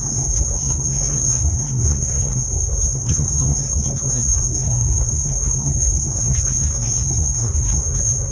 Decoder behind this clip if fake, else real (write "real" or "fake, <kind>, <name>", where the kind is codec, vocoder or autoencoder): fake, codec, SNAC